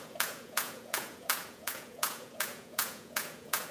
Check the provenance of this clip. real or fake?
fake